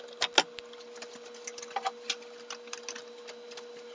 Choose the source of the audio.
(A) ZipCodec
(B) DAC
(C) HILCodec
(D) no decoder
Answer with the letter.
D